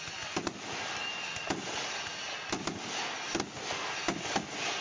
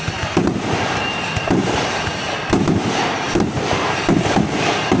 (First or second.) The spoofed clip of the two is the second